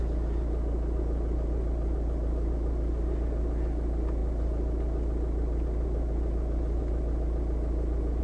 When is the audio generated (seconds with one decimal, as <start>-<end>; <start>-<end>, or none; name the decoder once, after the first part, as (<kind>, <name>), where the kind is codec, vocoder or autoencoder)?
none